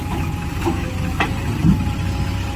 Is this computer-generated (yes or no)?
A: no